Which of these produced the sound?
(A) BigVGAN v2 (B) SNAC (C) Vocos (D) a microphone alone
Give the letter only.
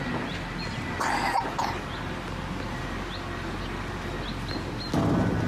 D